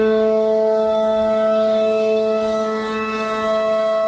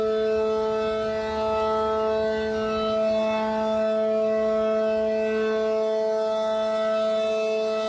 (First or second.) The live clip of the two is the second